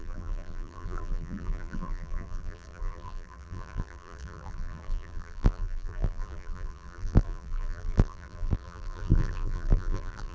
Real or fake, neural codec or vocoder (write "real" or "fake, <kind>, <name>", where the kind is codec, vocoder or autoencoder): fake, vocoder, BigVGAN v2